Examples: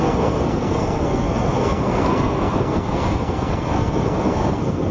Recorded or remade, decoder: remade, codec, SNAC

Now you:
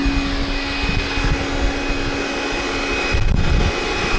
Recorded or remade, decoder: recorded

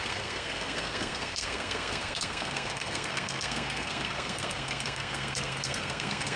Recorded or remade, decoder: remade, codec, SNAC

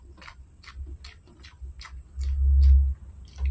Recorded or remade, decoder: recorded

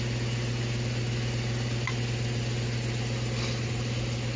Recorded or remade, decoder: recorded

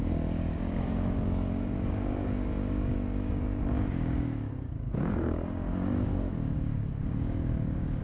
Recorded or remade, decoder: remade, codec, DAC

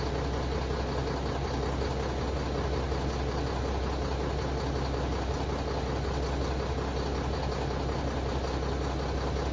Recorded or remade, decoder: recorded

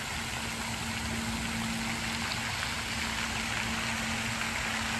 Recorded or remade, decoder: recorded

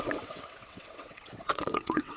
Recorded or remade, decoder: remade, vocoder, WaveNeXt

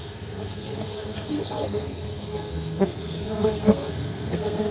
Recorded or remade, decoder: remade, codec, SNAC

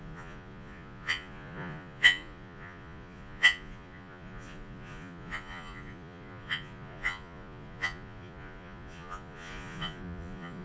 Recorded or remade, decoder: remade, vocoder, Vocos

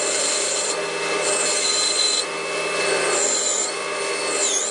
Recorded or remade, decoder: recorded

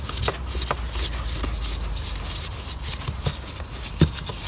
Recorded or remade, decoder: recorded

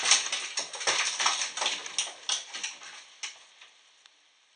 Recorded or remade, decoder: recorded